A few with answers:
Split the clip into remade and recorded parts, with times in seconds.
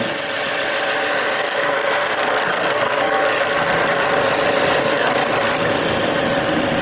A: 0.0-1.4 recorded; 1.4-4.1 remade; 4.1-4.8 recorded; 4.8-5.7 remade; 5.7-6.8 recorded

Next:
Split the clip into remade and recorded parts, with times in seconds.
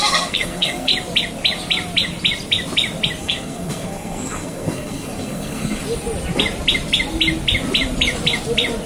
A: 0.0-0.9 remade; 0.9-3.2 recorded; 3.2-5.8 remade; 5.8-8.9 recorded